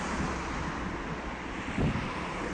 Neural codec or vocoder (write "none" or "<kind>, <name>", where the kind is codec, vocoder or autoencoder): none